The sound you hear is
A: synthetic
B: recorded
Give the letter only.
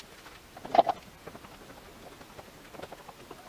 B